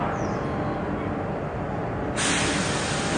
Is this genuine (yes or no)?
yes